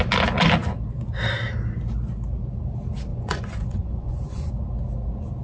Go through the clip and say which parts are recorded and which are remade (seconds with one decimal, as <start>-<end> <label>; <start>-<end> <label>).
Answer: 0.0-3.1 recorded; 3.1-4.5 remade; 4.5-5.4 recorded